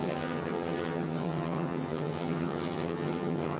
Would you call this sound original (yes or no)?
no